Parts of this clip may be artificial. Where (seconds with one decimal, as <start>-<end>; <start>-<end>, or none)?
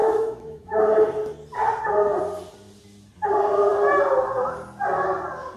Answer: 0.0-0.8